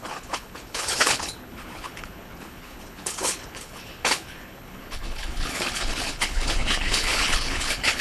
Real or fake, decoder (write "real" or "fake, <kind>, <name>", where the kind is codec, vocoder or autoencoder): fake, codec, HILCodec